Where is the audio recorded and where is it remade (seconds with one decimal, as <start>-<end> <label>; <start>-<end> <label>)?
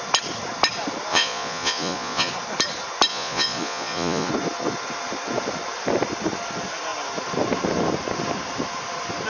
0.0-1.1 recorded; 1.1-2.3 remade; 2.3-3.1 recorded; 3.1-4.3 remade; 4.3-9.3 recorded